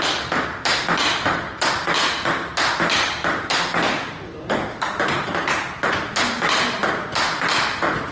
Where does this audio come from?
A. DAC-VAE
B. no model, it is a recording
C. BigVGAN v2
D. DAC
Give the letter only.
B